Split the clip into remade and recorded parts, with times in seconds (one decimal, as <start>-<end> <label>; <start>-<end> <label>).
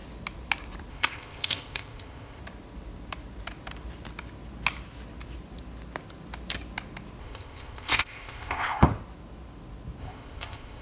0.0-0.9 recorded; 0.9-2.4 remade; 2.4-7.2 recorded; 7.2-8.9 remade; 8.9-10.0 recorded; 10.0-10.8 remade